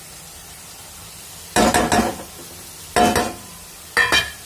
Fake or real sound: real